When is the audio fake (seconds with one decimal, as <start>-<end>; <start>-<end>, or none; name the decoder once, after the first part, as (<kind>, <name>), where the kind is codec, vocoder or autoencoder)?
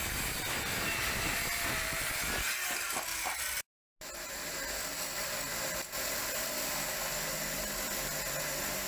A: none